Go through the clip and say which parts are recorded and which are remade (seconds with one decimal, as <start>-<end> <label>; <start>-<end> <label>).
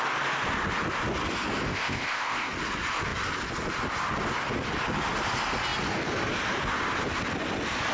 0.0-1.7 recorded; 1.7-2.5 remade; 2.5-7.9 recorded